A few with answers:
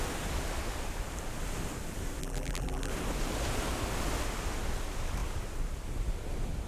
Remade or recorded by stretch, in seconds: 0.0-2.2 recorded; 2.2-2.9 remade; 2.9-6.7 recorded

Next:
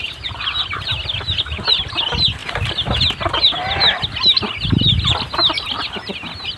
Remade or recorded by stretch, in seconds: 0.0-0.6 remade; 0.6-6.6 recorded

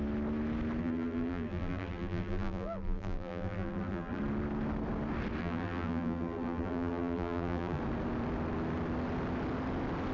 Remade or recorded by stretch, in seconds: 0.0-0.8 recorded; 0.8-4.2 remade; 4.2-5.4 recorded; 5.4-7.8 remade; 7.8-10.1 recorded

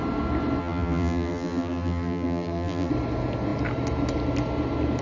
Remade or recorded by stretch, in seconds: 0.0-0.6 recorded; 0.6-2.9 remade; 2.9-5.0 recorded

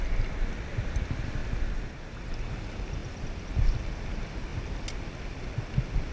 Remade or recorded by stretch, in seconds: 0.0-1.4 recorded; 1.4-1.9 remade; 1.9-3.0 recorded; 3.0-4.0 remade; 4.0-6.1 recorded